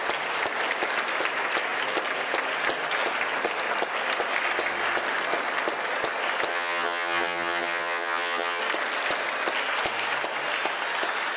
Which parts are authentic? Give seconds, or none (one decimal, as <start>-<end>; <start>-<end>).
0.0-6.5; 8.6-11.4